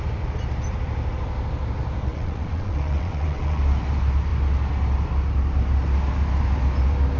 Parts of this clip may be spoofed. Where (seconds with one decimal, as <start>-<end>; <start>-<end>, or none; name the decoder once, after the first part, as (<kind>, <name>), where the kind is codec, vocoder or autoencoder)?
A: 2.1-3.6 (vocoder, WaveNeXt)